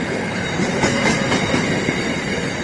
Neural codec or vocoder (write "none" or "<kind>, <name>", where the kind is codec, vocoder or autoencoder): vocoder, BigVGAN v2